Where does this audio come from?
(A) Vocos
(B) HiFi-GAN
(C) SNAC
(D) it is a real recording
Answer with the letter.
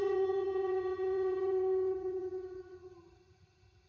B